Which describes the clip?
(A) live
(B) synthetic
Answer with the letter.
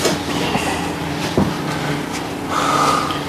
A